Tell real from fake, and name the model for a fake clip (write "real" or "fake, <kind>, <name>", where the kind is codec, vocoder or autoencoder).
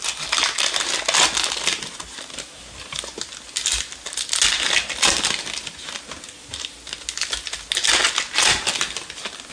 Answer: real